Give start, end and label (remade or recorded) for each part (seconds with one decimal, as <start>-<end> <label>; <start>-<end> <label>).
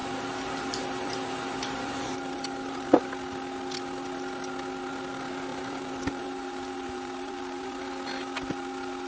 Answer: 0.0-3.0 remade; 3.0-5.5 recorded; 5.5-7.8 remade; 7.8-9.1 recorded